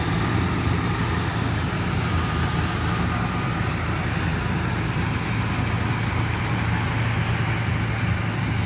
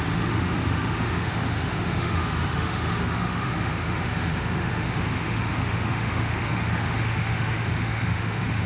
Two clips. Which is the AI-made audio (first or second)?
second